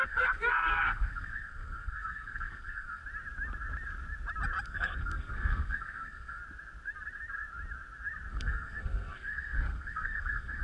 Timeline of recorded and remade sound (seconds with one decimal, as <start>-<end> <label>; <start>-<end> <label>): 0.0-3.0 remade; 3.0-4.6 recorded; 4.6-6.4 remade; 6.4-8.3 recorded; 8.3-10.6 remade